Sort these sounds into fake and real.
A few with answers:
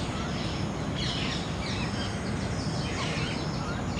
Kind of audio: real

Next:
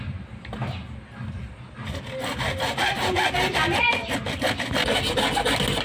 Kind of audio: real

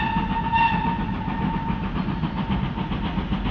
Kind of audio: real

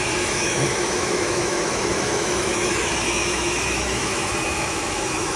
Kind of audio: fake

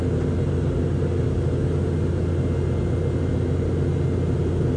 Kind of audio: real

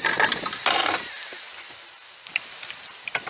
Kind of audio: real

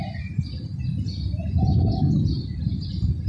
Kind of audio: real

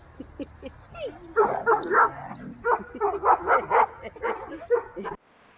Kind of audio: real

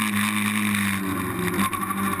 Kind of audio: real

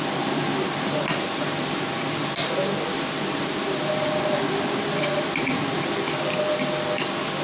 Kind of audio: real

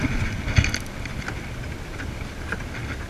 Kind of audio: real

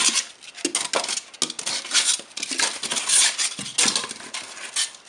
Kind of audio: real